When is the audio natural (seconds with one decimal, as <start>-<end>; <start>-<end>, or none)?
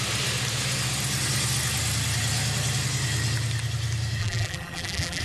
0.0-4.2